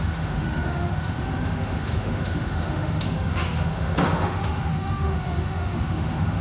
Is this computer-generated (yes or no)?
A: yes